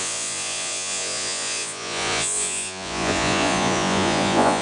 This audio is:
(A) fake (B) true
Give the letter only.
A